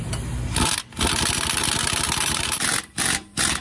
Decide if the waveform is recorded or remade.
recorded